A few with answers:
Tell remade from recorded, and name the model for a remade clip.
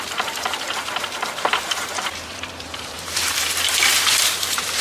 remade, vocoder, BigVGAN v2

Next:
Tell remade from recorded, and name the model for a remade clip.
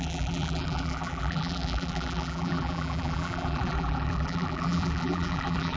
remade, vocoder, BigVGAN v2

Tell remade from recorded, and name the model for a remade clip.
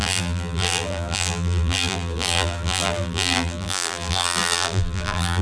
remade, vocoder, BigVGAN v2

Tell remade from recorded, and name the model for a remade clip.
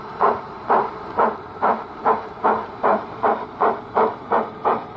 remade, vocoder, BigVGAN v2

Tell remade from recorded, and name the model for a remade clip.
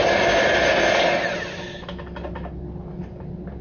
recorded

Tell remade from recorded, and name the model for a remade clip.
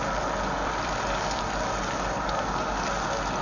remade, vocoder, BigVGAN v2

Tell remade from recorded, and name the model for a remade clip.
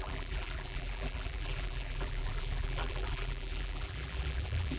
remade, vocoder, BigVGAN v2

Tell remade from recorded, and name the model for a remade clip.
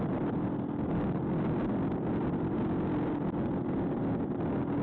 recorded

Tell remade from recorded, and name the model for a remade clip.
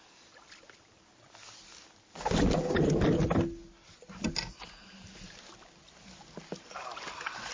recorded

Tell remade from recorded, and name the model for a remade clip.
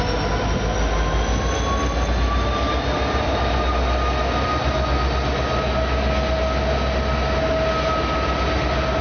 recorded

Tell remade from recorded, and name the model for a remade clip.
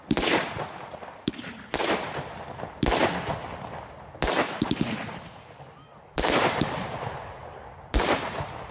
remade, vocoder, BigVGAN v2